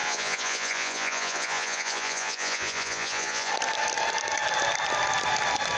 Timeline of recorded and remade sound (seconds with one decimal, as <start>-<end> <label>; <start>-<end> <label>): 0.0-3.5 remade; 3.5-5.8 recorded